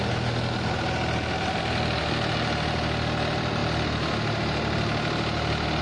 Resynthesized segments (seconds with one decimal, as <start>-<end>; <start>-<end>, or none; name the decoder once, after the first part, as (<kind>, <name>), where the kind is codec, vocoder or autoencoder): none

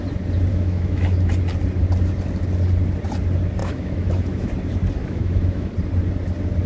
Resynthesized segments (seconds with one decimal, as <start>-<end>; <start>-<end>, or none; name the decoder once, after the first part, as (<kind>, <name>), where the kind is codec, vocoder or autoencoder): 0.5-1.3 (autoencoder, DAC-VAE); 3.6-4.5; 5.0-5.7

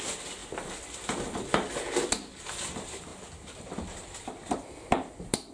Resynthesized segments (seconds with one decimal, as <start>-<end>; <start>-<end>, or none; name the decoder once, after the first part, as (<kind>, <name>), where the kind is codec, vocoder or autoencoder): none

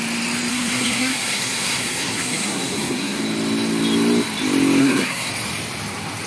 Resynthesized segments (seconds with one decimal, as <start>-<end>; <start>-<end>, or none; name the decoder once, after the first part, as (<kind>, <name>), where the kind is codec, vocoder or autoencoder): 0.5-3.2 (codec, SNAC); 4.8-5.3

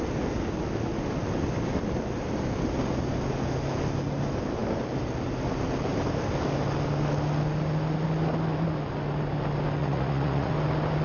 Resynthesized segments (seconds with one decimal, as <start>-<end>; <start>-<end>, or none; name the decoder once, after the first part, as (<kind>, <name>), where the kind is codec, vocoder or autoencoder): 9.8-10.5 (vocoder, Vocos)

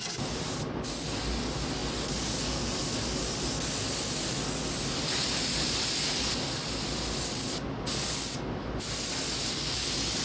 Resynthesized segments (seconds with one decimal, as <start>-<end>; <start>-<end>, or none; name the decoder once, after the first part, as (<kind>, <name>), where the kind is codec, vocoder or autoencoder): none

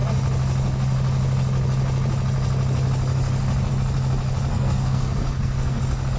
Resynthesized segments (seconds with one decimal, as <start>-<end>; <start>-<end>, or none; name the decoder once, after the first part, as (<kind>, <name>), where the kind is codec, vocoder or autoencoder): 4.5-5.8 (codec, SNAC)

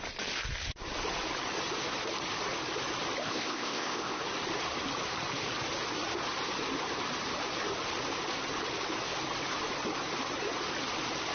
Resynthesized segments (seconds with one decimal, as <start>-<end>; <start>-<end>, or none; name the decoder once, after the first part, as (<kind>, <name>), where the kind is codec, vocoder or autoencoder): 3.2-4.2 (codec, ZipCodec)